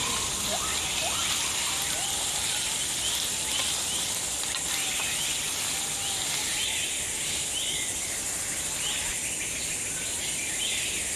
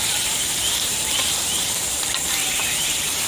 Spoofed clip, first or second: second